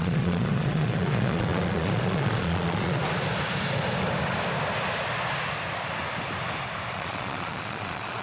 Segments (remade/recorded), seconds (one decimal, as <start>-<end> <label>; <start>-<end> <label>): 0.0-3.0 remade; 3.0-6.9 recorded; 6.9-8.2 remade

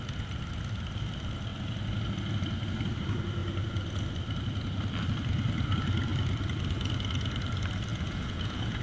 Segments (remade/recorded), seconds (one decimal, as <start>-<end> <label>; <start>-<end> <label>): 0.0-7.9 recorded; 7.9-8.8 remade